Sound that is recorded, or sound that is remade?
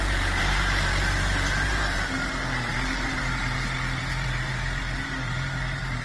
remade